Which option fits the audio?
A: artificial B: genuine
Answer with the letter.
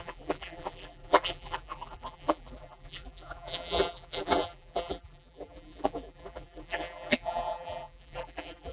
A